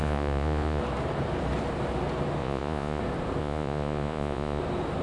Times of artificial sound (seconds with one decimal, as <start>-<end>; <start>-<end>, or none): 0.0-0.8; 2.4-3.0; 3.4-4.6